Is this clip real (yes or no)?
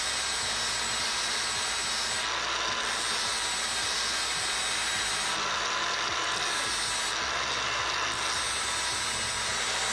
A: yes